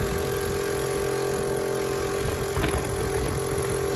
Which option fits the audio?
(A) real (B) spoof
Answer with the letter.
A